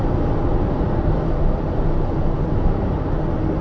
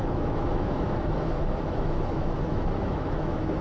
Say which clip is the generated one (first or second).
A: second